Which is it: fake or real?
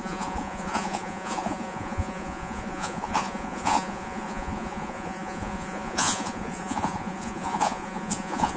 fake